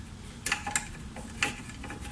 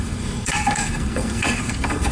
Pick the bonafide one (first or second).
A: first